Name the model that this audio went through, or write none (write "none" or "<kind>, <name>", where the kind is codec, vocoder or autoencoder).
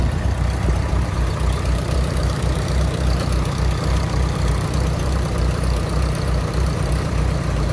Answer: vocoder, BigVGAN v2